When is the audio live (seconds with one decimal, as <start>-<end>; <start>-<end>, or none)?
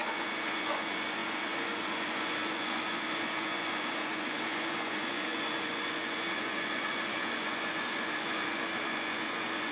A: none